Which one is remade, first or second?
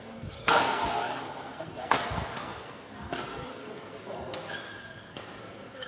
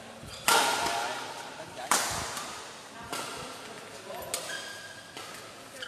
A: first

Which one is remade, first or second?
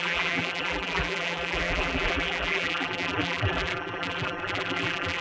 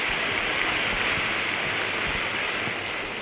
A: first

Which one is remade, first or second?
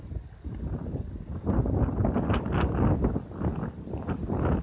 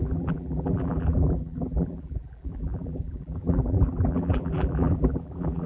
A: second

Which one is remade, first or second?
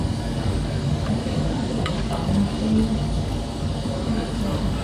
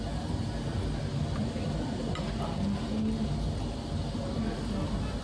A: first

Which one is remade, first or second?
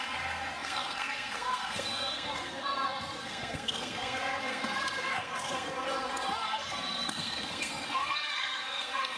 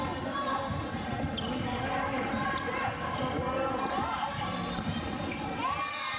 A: first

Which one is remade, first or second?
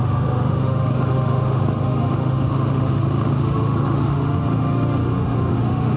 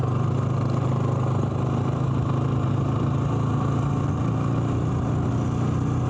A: first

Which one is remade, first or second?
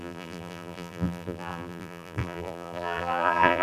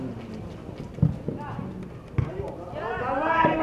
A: first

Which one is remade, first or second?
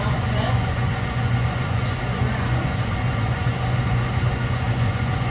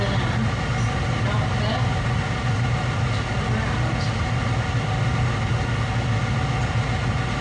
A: first